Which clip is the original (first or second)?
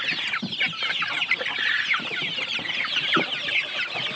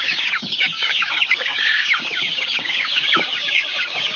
first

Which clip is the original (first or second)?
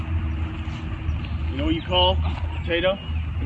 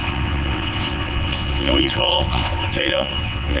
first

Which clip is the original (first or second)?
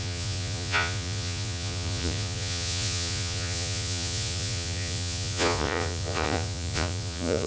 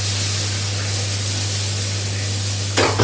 second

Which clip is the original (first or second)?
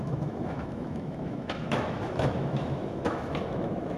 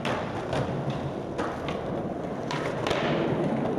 second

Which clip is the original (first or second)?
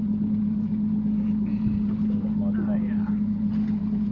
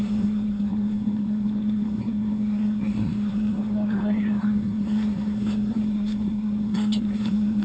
first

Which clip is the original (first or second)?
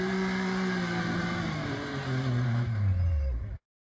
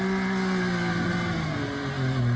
second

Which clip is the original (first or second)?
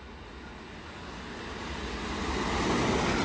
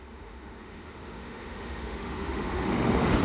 first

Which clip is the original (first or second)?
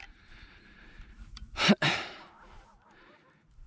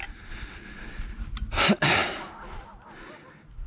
second